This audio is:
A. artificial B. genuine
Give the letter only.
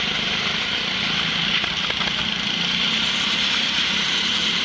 B